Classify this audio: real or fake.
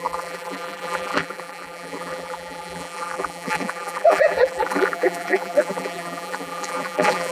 fake